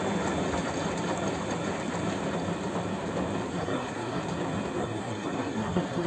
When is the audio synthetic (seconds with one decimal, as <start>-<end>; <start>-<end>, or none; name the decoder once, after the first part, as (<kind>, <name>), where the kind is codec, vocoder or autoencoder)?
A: 3.5-4.2 (codec, SNAC); 4.8-6.1

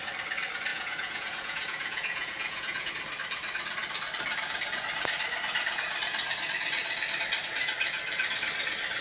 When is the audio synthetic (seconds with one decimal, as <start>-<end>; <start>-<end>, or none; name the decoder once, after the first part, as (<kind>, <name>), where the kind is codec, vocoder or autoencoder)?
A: 0.7-2.9 (vocoder, Vocos)

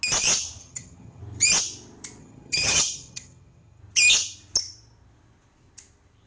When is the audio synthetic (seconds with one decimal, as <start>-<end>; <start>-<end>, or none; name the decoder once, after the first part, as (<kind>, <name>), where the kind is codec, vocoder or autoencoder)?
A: 0.6-1.2 (vocoder, HiFi-GAN); 2.2-3.8

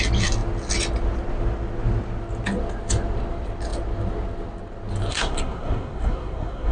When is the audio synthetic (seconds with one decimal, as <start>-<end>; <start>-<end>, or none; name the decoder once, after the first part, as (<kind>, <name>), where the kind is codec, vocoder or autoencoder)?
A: 5.1-6.7 (codec, SNAC)

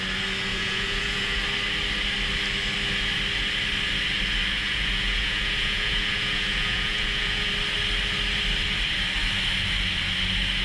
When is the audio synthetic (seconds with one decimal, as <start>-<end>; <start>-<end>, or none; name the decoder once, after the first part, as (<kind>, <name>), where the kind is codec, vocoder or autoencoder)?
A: 0.5-1.4 (vocoder, Vocos); 4.5-7.5

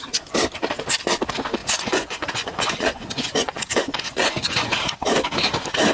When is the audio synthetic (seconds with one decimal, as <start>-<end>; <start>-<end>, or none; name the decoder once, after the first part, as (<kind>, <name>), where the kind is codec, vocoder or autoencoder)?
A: 1.6-4.8 (vocoder, Vocos)

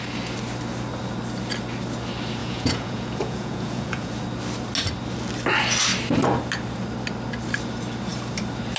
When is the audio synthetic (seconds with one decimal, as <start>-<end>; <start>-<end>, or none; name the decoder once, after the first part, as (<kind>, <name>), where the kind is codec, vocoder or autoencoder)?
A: 2.4-4.1 (vocoder, Vocos)

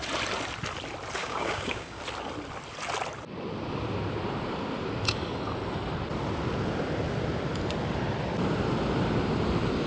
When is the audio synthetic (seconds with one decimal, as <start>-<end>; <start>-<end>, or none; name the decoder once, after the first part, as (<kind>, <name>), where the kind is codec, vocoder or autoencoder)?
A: 1.2-2.0 (codec, DAC)